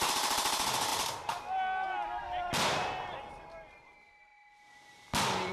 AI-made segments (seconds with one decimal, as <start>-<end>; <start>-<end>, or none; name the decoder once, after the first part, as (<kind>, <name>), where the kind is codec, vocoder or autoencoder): none